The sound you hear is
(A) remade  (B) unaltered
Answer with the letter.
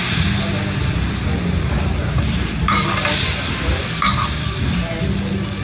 B